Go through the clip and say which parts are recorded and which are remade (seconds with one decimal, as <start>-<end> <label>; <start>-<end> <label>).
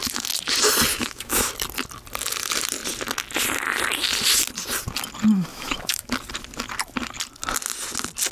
0.0-0.9 recorded; 0.9-1.5 remade; 1.5-5.5 recorded; 5.5-6.1 remade; 6.1-8.3 recorded